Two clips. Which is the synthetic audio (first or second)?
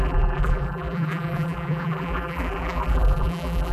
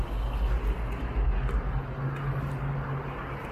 first